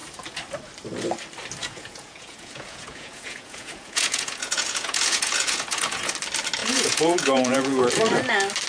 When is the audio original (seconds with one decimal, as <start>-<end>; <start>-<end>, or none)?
0.0-1.6; 6.1-6.6; 7.9-8.7